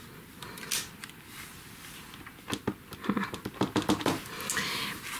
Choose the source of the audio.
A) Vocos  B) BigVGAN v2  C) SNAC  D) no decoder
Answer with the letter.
D